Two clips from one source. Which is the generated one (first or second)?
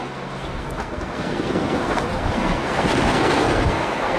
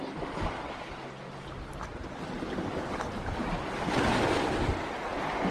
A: first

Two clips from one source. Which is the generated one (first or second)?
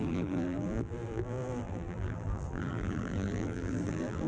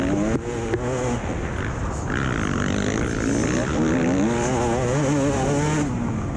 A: first